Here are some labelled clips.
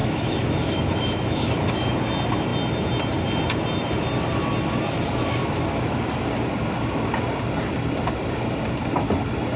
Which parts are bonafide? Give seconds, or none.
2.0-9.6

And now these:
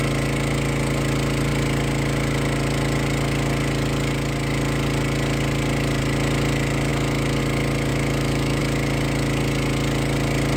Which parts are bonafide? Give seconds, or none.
0.0-6.9; 7.4-7.9; 8.6-10.6